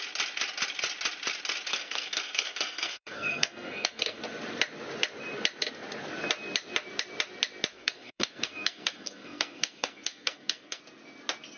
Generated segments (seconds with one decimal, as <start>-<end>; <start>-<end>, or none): 1.7-4.2; 7.7-10.8